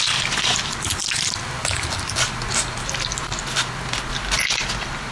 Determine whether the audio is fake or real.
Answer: real